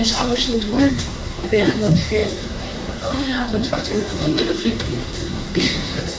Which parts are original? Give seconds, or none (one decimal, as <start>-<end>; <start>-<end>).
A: none